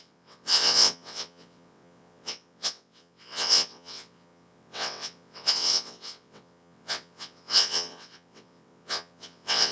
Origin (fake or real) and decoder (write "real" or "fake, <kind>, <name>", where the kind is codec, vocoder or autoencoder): fake, vocoder, WaveNeXt